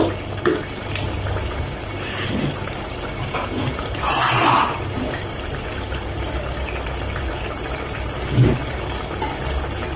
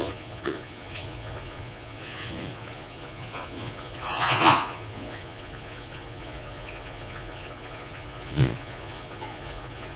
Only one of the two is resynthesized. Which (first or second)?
second